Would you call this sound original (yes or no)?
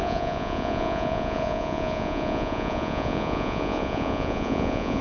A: no